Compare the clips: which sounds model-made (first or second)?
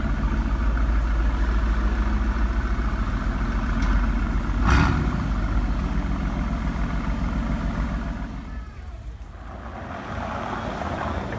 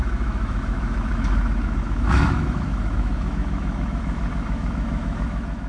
second